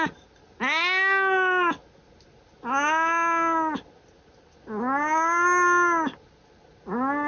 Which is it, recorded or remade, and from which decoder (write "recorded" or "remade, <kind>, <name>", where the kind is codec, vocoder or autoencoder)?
recorded